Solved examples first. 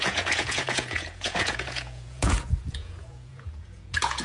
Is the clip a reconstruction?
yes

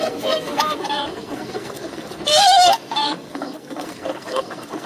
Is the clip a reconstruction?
yes